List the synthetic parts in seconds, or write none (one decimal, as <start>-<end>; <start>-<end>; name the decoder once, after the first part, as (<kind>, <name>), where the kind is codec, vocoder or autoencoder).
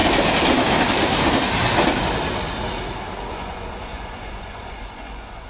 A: 3.3-5.5 (vocoder, Vocos)